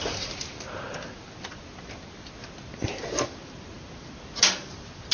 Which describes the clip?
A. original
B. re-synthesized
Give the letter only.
A